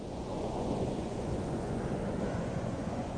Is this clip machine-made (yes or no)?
yes